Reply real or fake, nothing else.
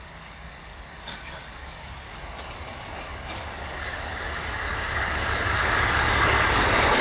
fake